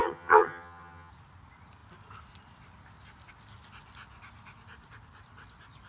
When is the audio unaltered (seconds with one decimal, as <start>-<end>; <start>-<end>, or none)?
1.1-5.9